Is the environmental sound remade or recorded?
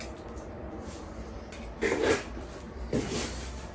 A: remade